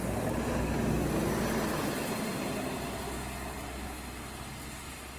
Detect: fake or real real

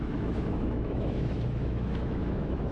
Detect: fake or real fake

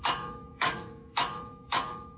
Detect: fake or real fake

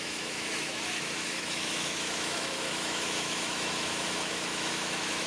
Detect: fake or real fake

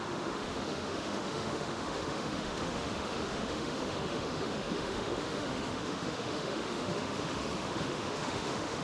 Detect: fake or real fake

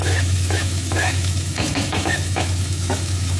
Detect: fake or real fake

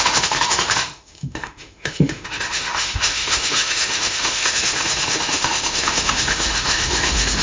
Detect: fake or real fake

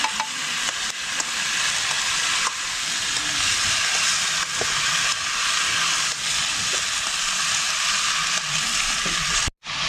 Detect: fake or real real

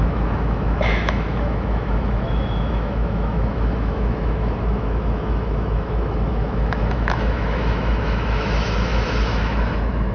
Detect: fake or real fake